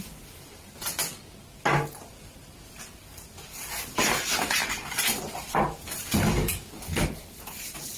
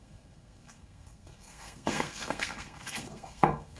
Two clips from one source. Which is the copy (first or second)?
second